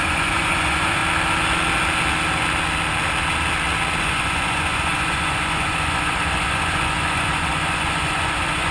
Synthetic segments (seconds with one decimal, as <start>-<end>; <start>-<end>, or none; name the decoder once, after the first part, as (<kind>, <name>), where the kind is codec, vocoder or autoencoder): 0.0-1.0 (vocoder, Vocos); 4.0-8.7